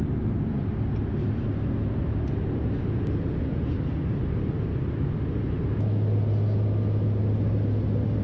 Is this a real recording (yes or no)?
yes